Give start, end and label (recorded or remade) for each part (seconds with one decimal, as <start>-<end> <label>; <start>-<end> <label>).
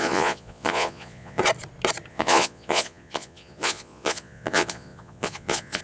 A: 0.0-1.4 remade; 1.4-2.1 recorded; 2.1-5.8 remade